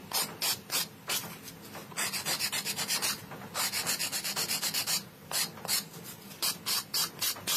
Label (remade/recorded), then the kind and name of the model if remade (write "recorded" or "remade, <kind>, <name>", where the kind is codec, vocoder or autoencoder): remade, vocoder, BigVGAN v2